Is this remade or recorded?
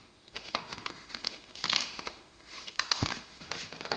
remade